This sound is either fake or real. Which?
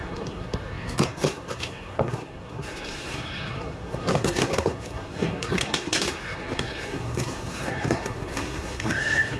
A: fake